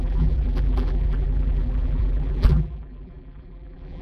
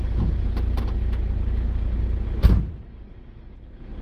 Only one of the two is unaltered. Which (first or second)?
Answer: second